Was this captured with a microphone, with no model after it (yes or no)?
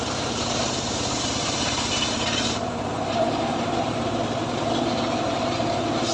no